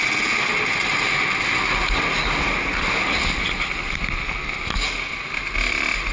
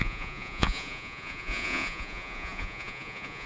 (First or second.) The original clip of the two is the first